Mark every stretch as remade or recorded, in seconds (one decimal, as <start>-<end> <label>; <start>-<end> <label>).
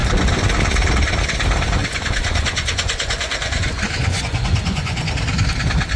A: 0.0-1.8 recorded; 1.8-5.1 remade; 5.1-6.0 recorded